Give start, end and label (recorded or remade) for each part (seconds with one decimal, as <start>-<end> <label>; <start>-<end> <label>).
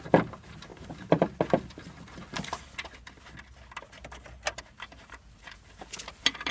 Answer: 0.0-6.5 recorded